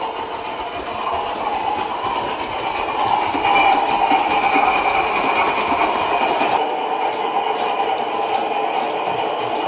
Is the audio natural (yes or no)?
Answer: yes